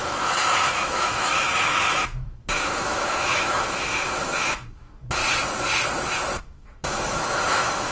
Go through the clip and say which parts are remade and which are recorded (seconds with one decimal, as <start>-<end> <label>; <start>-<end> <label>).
0.0-5.2 remade; 5.2-6.4 recorded; 6.4-7.9 remade